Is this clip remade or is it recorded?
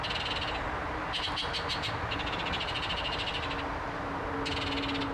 recorded